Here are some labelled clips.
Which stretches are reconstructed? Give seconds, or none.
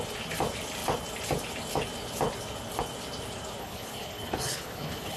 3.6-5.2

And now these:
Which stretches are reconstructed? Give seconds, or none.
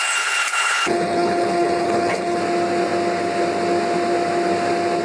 0.0-2.4